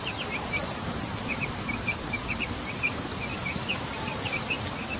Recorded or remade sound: remade